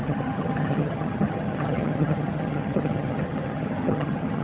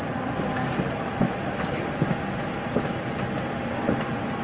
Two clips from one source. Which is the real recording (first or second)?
second